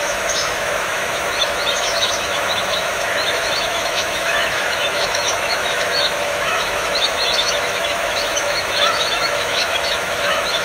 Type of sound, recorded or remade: remade